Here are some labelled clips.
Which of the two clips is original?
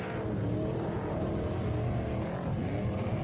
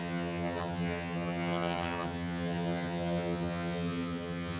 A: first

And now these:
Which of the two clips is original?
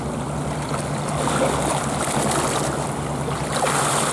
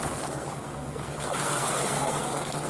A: first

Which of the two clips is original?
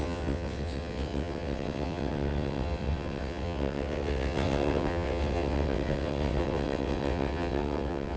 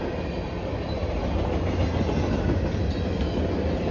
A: second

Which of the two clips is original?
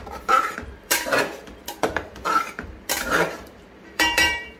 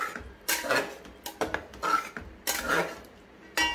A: second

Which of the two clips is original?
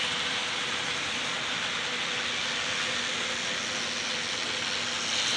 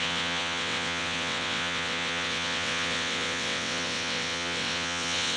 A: first